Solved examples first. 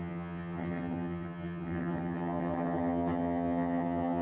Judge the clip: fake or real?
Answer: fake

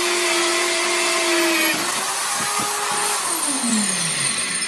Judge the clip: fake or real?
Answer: real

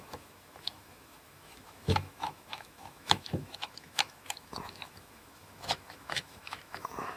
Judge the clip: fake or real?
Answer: fake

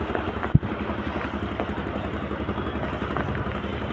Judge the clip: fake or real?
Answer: real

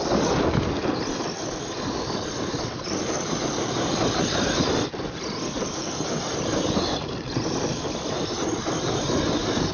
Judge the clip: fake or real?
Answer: fake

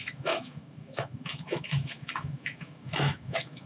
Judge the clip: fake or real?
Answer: fake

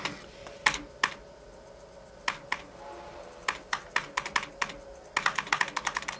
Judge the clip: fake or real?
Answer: real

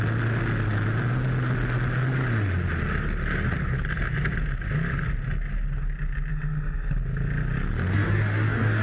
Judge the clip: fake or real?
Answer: real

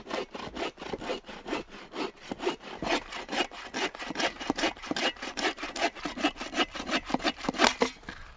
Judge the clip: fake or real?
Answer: real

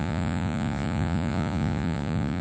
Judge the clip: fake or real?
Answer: fake